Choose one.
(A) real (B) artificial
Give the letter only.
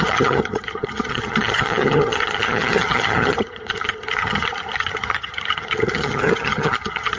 B